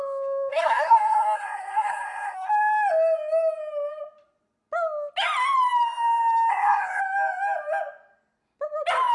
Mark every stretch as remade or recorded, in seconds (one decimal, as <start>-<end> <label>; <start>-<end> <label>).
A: 0.0-0.5 recorded; 0.5-2.5 remade; 2.5-6.5 recorded; 6.5-7.0 remade; 7.0-9.1 recorded